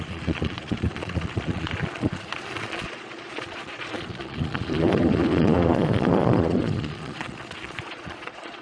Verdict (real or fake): fake